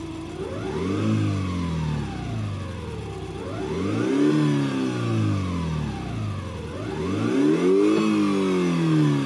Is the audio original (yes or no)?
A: yes